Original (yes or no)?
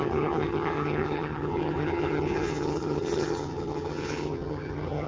no